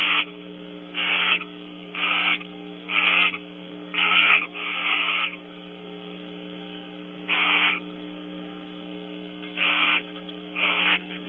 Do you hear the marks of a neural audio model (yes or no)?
yes